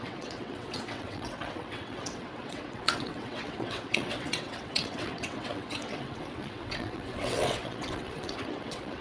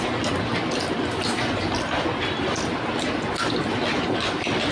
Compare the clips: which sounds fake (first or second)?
first